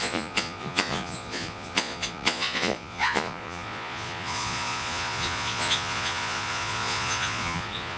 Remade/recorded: remade